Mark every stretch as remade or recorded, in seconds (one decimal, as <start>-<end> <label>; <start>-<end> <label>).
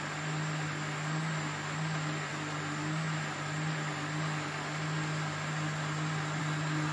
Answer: 0.0-6.9 recorded